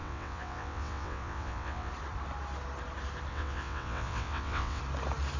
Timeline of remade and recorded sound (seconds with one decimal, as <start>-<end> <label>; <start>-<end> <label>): 0.0-1.9 remade; 1.9-3.3 recorded; 3.3-4.8 remade; 4.8-5.4 recorded